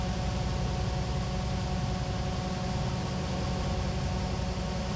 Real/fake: real